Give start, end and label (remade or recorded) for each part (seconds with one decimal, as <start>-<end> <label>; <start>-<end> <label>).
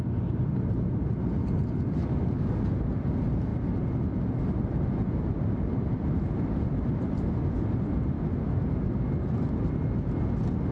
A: 0.0-2.0 recorded; 2.0-2.6 remade; 2.6-10.7 recorded